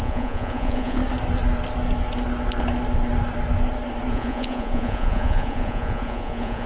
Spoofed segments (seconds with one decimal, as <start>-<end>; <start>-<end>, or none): 0.0-1.0; 4.1-6.7